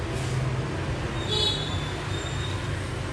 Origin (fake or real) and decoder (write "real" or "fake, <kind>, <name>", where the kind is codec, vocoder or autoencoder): real